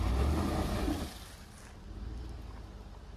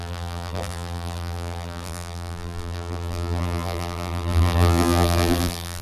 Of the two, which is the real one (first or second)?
first